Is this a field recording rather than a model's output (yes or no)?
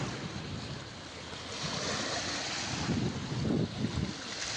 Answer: yes